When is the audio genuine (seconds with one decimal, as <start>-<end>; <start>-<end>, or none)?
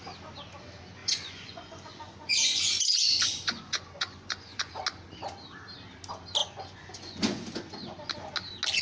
0.0-1.0; 4.7-6.4; 7.9-8.8